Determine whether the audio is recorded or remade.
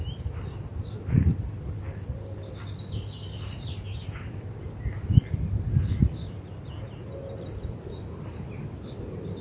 recorded